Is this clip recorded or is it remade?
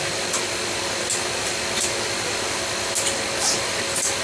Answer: recorded